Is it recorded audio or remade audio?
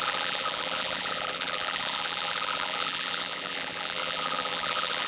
remade